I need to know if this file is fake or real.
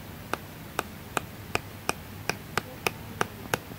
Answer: real